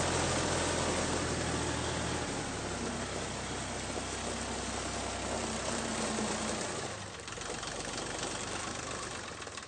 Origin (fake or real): real